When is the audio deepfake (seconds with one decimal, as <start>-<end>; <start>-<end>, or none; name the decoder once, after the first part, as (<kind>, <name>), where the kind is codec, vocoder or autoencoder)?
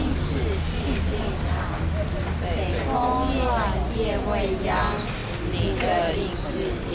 none